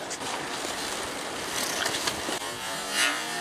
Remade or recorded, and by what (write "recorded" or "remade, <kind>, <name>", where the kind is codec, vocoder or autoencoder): recorded